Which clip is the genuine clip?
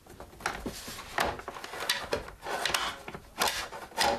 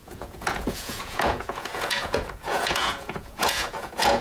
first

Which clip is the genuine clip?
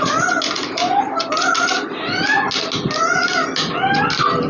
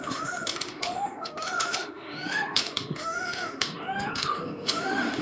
first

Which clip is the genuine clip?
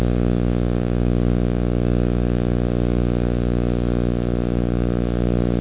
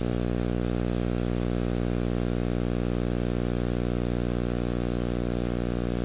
second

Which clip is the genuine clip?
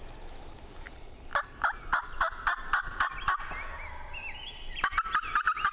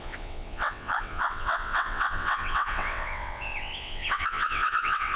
first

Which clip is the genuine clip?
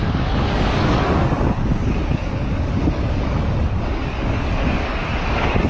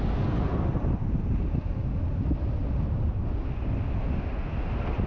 second